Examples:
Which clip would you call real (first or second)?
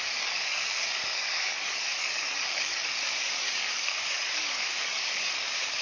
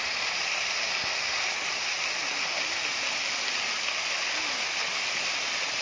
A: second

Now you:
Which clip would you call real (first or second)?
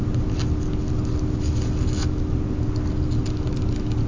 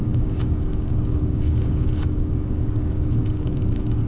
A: first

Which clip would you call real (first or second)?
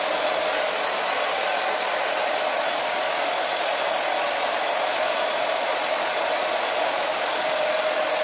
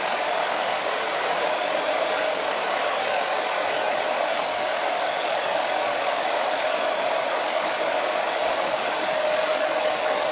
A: first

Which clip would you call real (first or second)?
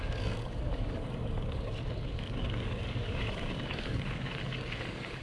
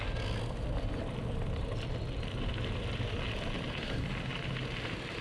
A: second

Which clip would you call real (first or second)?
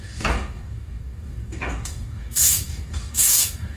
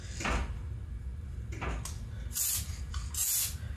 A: second